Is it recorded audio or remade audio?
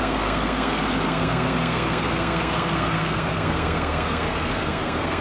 remade